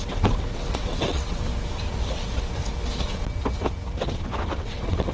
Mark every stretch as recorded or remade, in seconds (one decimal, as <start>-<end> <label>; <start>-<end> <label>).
0.0-1.5 remade; 1.5-4.5 recorded; 4.5-5.1 remade